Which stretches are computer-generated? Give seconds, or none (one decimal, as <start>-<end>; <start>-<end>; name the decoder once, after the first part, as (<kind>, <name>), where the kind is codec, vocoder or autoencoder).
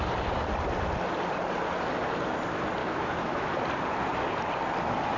2.8-3.5 (autoencoder, DAC-VAE)